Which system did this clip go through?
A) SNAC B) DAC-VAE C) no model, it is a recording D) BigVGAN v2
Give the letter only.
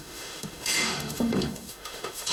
B